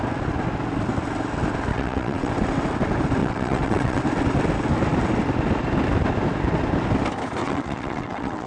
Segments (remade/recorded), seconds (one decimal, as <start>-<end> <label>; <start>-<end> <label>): 0.0-1.7 recorded; 1.7-2.3 remade; 2.3-3.2 recorded; 3.2-4.0 remade; 4.0-7.4 recorded; 7.4-8.5 remade